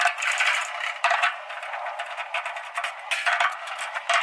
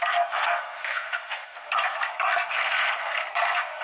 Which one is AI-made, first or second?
second